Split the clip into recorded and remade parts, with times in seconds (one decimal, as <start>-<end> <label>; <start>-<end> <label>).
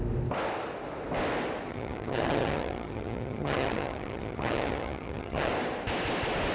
0.0-1.7 recorded; 1.7-5.5 remade; 5.5-6.5 recorded